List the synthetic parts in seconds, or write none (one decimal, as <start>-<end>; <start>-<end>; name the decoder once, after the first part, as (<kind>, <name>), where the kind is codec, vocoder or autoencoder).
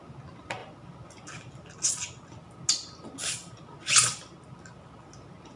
none